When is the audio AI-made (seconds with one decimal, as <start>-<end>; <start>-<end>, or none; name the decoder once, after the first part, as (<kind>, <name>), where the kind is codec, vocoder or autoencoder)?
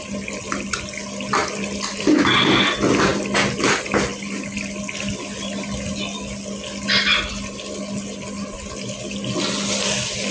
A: none